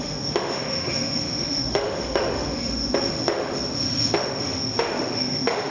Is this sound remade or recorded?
remade